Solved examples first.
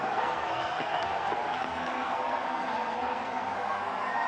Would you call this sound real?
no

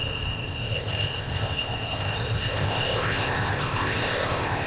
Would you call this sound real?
no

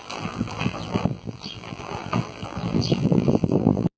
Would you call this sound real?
no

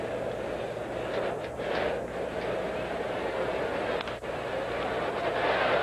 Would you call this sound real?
yes